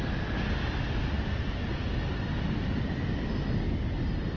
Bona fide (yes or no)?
yes